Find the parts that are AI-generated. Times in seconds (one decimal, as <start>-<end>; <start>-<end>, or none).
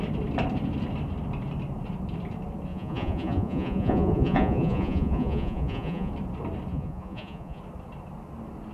2.7-6.1; 6.7-7.6